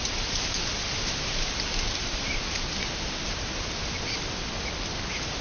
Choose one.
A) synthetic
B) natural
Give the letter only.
B